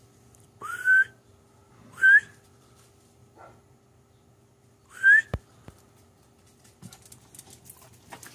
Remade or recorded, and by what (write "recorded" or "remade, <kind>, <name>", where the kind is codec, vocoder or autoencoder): recorded